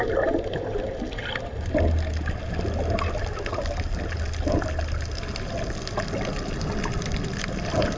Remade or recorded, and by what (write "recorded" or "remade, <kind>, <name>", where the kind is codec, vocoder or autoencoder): recorded